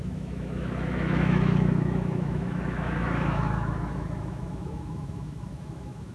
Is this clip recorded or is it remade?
remade